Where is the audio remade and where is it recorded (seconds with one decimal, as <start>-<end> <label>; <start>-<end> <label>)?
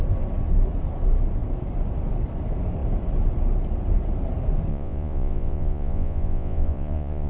0.0-4.7 recorded; 4.7-7.3 remade